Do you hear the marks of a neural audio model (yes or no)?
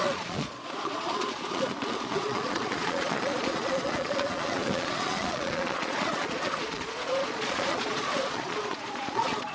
yes